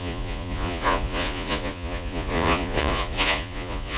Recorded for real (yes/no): no